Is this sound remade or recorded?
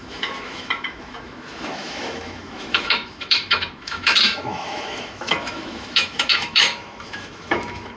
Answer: remade